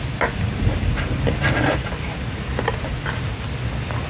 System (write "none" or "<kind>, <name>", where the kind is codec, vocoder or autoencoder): none